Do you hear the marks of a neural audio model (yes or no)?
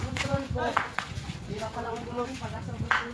yes